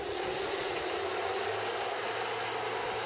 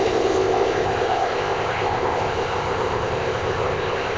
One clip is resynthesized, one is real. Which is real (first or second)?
first